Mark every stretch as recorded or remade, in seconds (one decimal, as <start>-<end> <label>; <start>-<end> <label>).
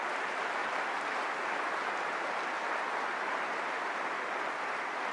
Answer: 0.0-5.1 recorded